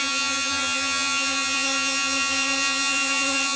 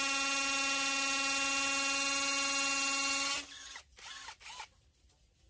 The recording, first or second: second